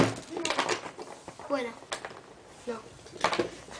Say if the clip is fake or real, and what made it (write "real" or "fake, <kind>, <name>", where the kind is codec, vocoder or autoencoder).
real